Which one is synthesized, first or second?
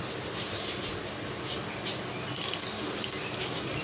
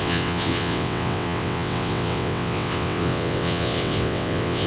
second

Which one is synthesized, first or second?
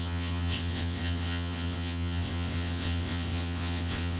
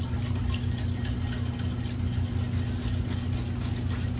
first